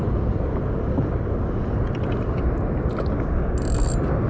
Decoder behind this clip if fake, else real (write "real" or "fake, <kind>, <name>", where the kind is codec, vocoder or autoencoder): real